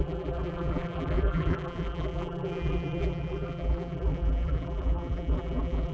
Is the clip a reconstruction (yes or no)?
yes